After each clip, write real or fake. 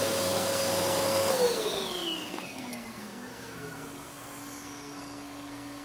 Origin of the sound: fake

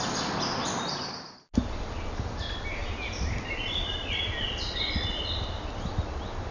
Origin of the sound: real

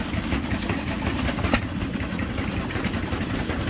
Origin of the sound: real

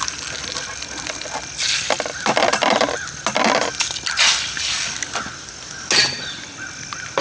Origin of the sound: real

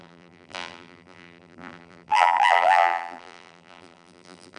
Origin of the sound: fake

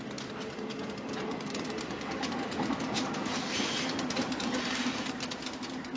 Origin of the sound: real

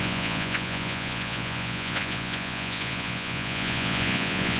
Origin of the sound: fake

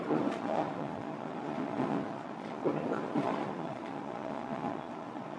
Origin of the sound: fake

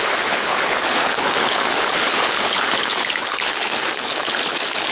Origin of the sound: fake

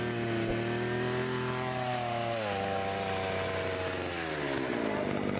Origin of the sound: real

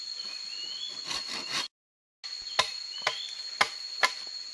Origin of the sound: real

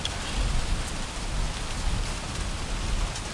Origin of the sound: real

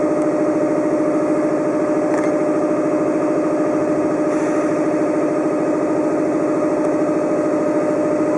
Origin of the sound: real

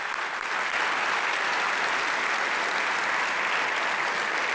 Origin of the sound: real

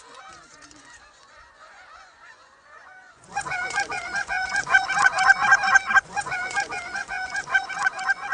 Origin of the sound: fake